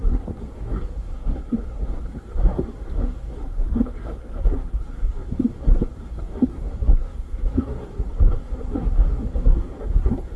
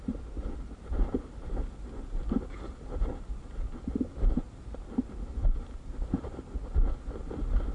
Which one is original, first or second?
second